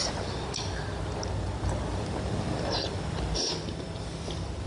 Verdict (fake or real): real